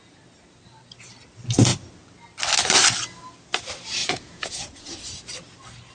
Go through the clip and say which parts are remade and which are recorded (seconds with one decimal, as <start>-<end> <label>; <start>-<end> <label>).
0.0-4.0 recorded; 4.0-5.0 remade; 5.0-5.9 recorded